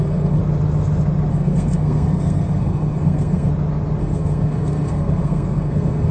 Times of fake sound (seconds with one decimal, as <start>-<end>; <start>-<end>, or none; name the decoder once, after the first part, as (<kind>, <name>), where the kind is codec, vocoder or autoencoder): 0.0-0.4 (codec, SNAC); 1.3-3.5; 4.0-6.1